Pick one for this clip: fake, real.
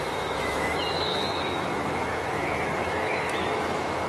fake